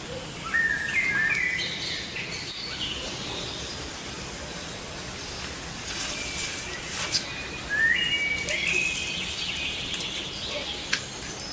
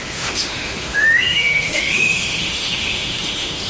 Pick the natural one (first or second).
first